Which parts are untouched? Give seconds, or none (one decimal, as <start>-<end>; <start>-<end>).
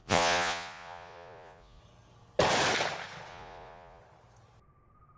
1.8-3.3; 4.0-5.2